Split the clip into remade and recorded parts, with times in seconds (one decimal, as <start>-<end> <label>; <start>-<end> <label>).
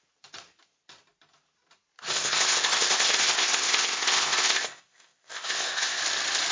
0.0-2.1 recorded; 2.1-6.0 remade; 6.0-6.5 recorded